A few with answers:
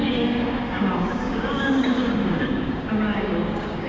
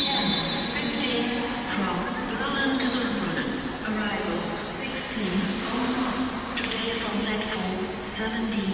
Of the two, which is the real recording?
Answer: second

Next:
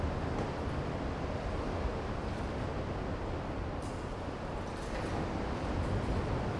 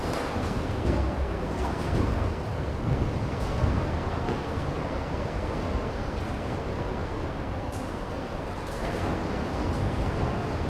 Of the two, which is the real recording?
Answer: first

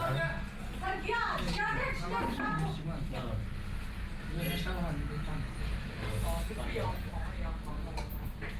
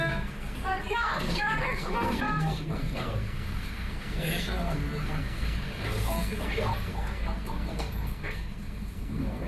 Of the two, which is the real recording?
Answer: first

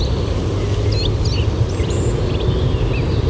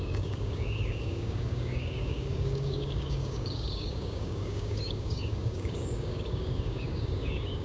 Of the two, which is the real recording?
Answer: first